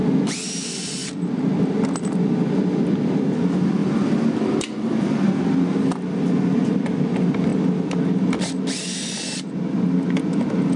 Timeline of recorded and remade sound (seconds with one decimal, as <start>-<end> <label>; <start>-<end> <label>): 0.0-10.8 recorded